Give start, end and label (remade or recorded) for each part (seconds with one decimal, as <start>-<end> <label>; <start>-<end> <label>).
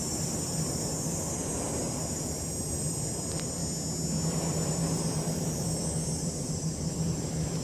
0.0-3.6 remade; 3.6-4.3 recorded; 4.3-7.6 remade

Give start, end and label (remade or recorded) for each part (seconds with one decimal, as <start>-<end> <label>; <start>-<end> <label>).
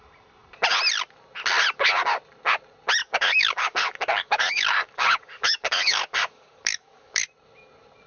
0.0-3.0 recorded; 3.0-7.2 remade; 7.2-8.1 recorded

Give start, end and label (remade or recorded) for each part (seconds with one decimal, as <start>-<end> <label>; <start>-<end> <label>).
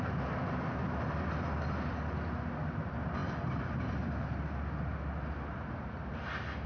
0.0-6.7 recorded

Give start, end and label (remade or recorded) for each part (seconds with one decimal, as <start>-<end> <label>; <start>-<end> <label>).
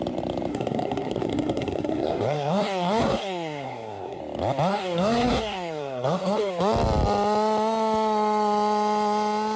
0.0-0.5 recorded; 0.5-4.2 remade; 4.2-4.7 recorded; 4.7-6.5 remade; 6.5-9.6 recorded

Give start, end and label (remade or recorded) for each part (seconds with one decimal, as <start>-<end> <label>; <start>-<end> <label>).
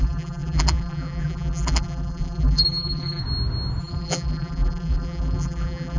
0.0-3.2 remade; 3.2-3.8 recorded; 3.8-6.0 remade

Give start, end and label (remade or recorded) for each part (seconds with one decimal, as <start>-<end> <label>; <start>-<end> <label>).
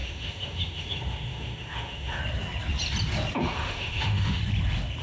0.0-2.2 remade; 2.2-3.4 recorded; 3.4-4.4 remade; 4.4-5.0 recorded